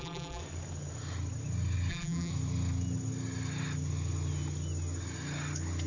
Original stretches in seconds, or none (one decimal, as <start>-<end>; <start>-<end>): 0.4-1.9; 2.3-5.9